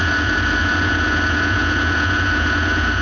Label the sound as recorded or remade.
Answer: remade